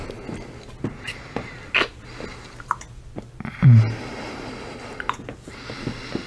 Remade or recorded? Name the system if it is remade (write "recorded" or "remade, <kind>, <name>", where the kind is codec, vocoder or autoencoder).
recorded